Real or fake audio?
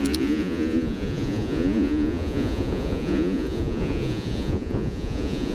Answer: fake